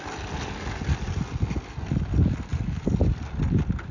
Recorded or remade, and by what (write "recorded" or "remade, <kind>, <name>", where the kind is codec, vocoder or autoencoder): recorded